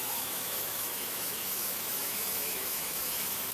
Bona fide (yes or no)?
no